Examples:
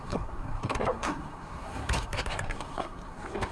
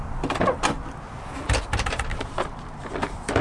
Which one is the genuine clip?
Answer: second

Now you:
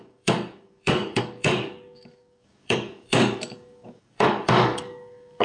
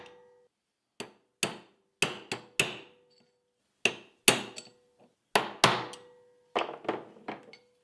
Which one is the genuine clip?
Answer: second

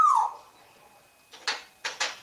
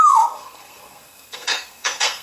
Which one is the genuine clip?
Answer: first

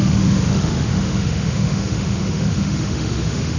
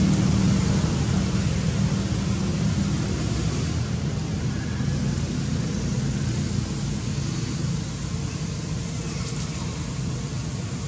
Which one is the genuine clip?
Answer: second